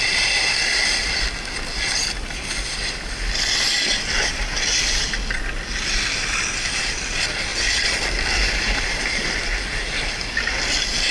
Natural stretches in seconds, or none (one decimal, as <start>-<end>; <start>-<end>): 0.0-11.1